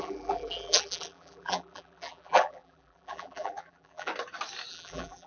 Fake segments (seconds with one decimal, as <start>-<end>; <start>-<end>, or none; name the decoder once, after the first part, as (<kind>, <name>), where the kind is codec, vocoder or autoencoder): 0.0-4.1 (vocoder, BigVGAN v2); 4.7-5.3